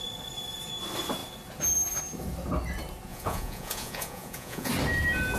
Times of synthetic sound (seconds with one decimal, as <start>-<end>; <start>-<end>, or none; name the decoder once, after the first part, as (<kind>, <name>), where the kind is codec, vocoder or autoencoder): 3.1-4.7 (vocoder, Vocos)